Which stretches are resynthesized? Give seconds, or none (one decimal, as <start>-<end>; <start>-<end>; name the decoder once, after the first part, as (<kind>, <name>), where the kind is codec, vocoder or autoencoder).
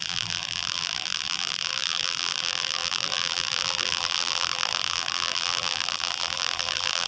0.0-7.1 (vocoder, BigVGAN v2)